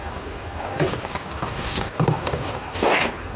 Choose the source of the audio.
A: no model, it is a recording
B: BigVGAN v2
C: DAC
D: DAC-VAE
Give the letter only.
C